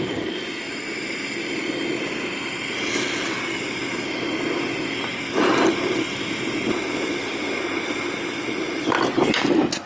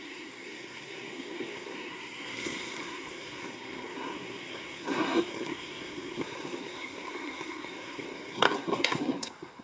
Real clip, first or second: first